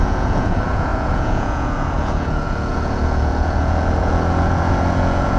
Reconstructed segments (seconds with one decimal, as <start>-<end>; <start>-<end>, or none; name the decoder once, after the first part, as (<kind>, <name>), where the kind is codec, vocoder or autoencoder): 0.0-5.4 (vocoder, Vocos)